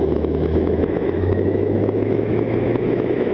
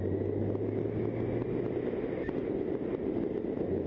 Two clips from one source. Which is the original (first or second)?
second